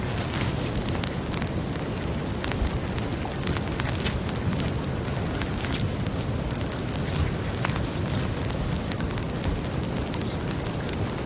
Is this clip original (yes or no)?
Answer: yes